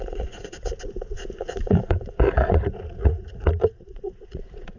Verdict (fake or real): fake